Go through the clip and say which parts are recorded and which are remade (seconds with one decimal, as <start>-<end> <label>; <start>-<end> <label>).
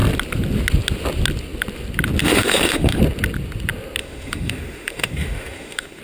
0.0-2.2 recorded; 2.2-3.0 remade; 3.0-4.0 recorded; 4.0-6.0 remade